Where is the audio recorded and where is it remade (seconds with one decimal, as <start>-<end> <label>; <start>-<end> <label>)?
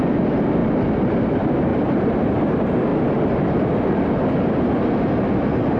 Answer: 0.0-1.7 recorded; 1.7-2.3 remade; 2.3-5.8 recorded